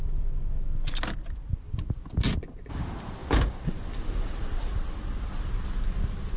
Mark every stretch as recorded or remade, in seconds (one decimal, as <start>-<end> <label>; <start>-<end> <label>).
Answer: 0.0-6.4 recorded